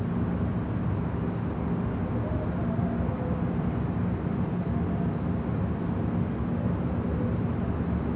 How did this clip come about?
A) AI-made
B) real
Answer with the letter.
B